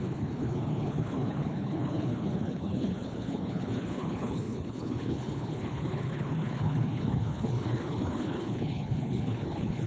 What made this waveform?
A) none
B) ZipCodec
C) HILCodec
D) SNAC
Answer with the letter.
C